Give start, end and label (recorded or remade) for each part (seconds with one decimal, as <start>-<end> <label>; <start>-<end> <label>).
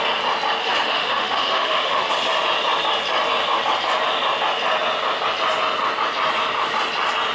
0.0-0.6 recorded; 0.6-2.1 remade; 2.1-7.3 recorded